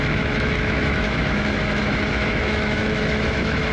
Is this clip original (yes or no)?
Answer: no